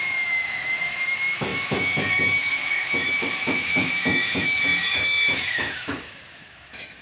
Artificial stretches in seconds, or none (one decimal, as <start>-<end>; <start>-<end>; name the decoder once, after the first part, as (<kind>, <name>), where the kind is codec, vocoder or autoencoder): 0.0-7.0 (autoencoder, DAC-VAE)